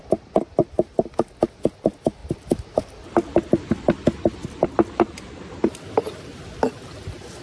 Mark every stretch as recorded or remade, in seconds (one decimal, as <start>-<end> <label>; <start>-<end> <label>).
0.0-7.4 recorded